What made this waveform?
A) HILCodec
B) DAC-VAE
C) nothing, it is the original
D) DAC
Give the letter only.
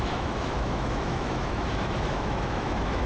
B